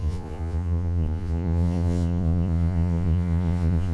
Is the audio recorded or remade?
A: remade